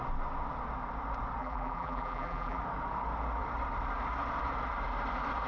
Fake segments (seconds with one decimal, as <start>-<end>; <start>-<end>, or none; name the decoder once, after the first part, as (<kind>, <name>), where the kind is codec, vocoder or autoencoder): 1.4-2.6 (vocoder, BigVGAN v2)